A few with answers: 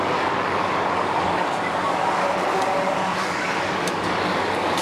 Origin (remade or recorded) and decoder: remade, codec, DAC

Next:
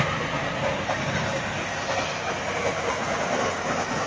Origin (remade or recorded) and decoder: recorded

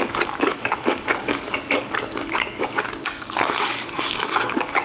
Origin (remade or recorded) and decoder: remade, codec, DAC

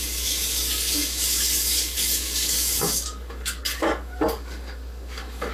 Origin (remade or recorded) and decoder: remade, codec, DAC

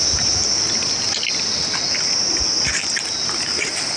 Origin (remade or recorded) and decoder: recorded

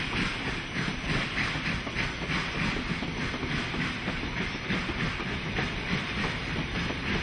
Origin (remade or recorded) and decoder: recorded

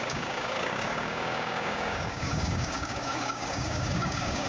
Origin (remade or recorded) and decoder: remade, codec, DAC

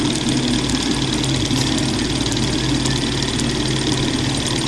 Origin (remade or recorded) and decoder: recorded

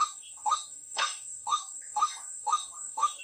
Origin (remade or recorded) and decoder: remade, codec, DAC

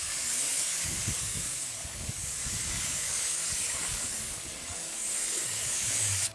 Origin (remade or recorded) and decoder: remade, codec, DAC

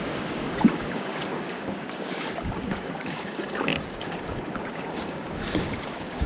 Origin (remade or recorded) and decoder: remade, codec, DAC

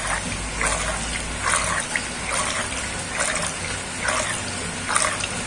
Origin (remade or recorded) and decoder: recorded